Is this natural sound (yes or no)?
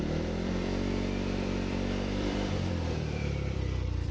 no